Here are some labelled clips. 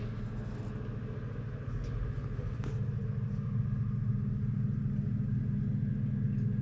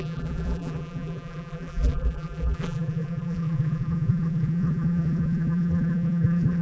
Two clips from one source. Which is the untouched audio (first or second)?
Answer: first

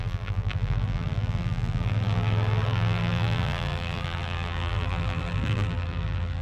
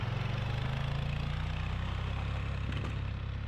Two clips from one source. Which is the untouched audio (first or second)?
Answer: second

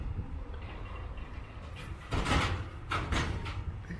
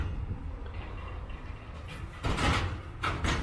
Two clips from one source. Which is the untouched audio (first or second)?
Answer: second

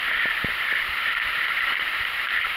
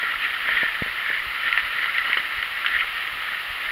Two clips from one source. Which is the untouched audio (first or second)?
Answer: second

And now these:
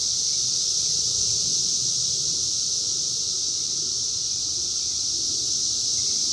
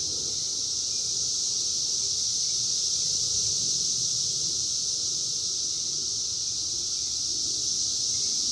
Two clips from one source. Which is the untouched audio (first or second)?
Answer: second